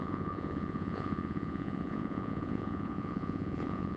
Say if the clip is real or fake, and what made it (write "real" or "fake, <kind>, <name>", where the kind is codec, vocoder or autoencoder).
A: fake, vocoder, Vocos